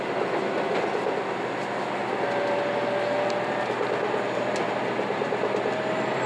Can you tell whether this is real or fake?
real